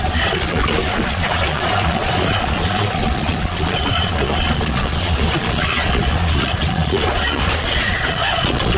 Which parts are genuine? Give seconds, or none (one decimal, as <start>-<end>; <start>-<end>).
none